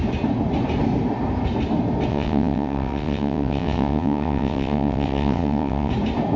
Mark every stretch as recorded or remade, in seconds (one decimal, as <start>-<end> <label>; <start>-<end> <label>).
0.0-2.1 recorded; 2.1-5.9 remade; 5.9-6.4 recorded